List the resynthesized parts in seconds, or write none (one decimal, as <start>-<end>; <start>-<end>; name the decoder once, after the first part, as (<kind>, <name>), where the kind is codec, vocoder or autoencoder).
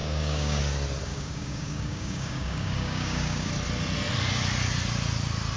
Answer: 0.0-0.6 (codec, DAC); 1.1-3.5